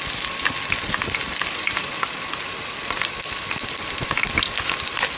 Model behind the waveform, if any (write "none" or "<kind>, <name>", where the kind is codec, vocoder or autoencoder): vocoder, BigVGAN v2